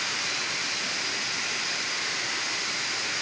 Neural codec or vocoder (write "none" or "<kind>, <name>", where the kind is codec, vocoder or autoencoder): none